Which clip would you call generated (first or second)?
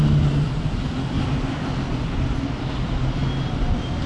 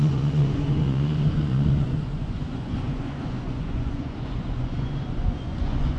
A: second